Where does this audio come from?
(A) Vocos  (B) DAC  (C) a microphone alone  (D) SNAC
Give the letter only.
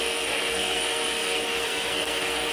D